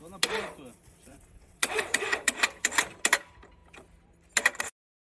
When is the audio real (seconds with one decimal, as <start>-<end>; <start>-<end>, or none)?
0.0-1.0; 2.3-5.0